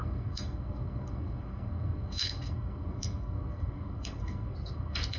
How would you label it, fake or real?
fake